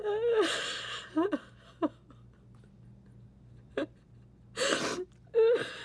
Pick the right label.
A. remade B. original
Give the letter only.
B